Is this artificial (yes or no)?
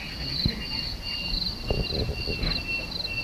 no